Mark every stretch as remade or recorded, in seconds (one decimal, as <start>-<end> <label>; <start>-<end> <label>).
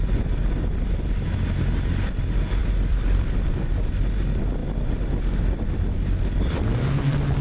0.0-2.6 recorded; 2.6-3.5 remade; 3.5-7.4 recorded